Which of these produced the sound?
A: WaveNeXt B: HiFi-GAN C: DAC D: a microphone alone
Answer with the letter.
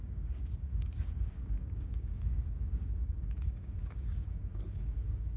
C